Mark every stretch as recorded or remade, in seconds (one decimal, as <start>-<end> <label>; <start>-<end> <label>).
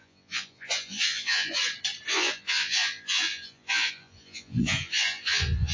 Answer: 0.0-1.6 remade; 1.6-2.1 recorded; 2.1-5.7 remade